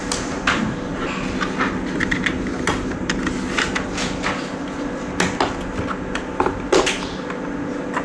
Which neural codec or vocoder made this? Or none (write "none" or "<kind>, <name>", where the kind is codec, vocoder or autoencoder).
none